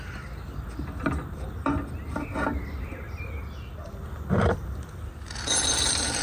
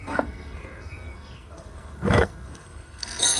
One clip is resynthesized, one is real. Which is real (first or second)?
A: first